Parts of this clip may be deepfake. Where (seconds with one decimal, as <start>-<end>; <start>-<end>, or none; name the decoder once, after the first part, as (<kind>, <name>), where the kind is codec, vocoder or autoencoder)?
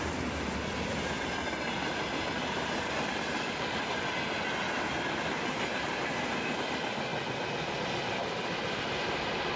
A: none